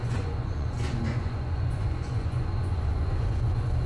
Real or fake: fake